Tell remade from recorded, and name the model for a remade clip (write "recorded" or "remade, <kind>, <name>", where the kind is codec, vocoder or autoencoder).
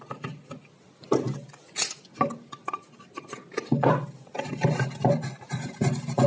recorded